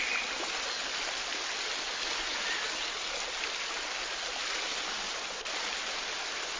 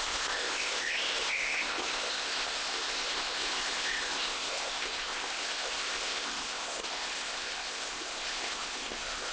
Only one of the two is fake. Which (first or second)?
second